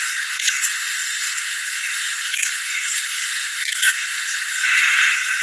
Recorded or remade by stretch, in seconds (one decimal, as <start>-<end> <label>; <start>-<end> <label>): 0.0-5.4 remade

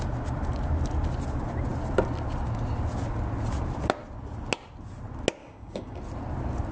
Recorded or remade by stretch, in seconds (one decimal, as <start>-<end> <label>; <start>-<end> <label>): 0.0-5.4 recorded; 5.4-6.0 remade; 6.0-6.7 recorded

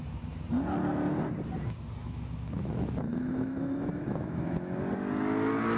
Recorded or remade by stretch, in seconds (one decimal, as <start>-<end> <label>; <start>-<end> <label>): 0.0-2.0 recorded; 2.0-4.8 remade; 4.8-5.8 recorded

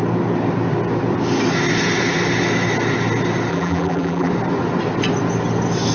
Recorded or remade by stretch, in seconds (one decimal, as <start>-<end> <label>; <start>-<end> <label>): 0.0-3.5 recorded; 3.5-4.3 remade; 4.3-5.9 recorded

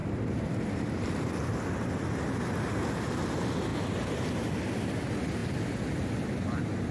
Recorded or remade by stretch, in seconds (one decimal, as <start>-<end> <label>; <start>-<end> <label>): 0.0-1.1 remade; 1.1-3.7 recorded; 3.7-4.3 remade; 4.3-6.9 recorded

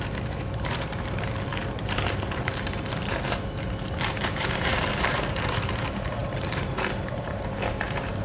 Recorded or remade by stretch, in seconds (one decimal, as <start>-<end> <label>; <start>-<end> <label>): 0.0-8.2 remade

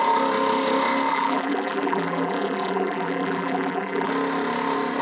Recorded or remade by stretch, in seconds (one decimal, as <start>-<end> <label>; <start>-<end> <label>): 0.0-1.1 recorded; 1.1-4.1 remade; 4.1-5.0 recorded